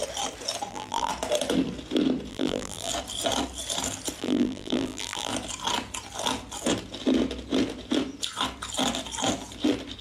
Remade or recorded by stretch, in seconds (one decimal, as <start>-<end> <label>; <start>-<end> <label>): 0.0-0.7 recorded; 0.7-1.1 remade; 1.1-2.3 recorded; 2.3-2.9 remade; 2.9-4.2 recorded; 4.2-5.3 remade; 5.3-10.0 recorded